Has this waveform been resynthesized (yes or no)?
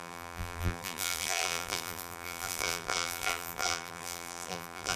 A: yes